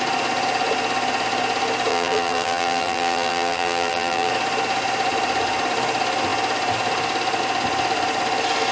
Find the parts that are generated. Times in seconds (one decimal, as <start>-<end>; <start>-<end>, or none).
1.9-4.3